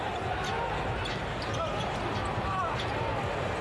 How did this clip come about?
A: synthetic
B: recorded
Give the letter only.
B